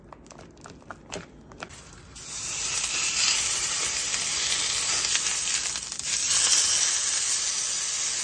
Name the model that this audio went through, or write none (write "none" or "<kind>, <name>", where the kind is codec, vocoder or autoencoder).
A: none